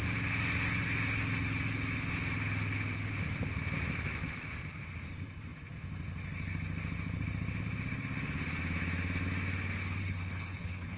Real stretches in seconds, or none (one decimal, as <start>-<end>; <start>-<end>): 0.0-10.0